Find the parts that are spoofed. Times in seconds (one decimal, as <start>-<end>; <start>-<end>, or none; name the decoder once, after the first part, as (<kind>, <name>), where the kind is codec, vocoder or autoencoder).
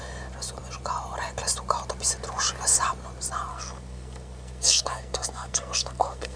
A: 3.5-6.4 (codec, SNAC)